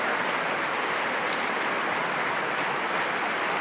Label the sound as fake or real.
real